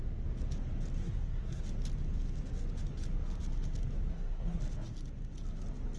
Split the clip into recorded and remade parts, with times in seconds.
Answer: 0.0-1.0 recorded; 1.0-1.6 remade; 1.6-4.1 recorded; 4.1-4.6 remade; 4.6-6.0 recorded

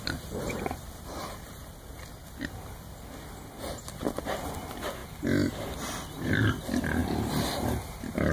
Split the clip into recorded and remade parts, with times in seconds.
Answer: 0.0-8.3 recorded

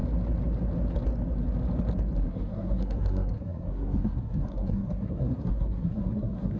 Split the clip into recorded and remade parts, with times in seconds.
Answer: 0.0-2.2 recorded; 2.2-6.6 remade

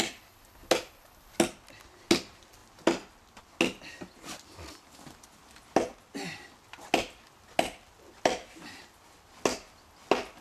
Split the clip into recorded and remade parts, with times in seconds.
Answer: 0.0-10.4 recorded

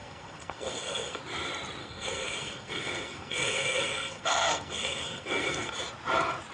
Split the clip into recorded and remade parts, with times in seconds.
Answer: 0.0-1.2 remade; 1.2-1.8 recorded; 1.8-5.7 remade; 5.7-6.5 recorded

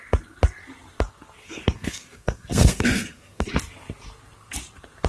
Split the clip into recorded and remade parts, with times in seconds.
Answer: 0.0-1.4 recorded; 1.4-3.5 remade; 3.5-5.1 recorded